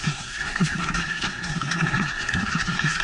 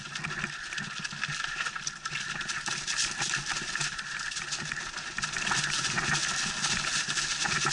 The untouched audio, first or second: second